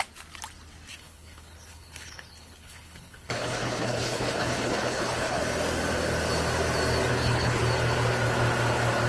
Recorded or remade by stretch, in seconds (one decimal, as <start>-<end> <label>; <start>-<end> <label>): 0.0-0.9 recorded; 0.9-5.4 remade; 5.4-7.1 recorded; 7.1-7.6 remade; 7.6-9.1 recorded